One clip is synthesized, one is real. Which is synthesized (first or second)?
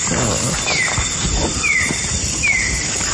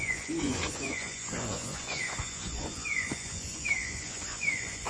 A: second